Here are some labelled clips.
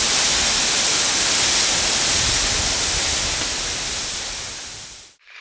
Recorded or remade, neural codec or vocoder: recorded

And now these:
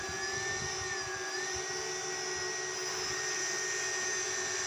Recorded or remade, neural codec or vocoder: recorded